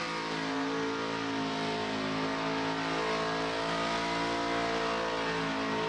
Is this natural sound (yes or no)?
yes